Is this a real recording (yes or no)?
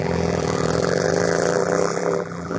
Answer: no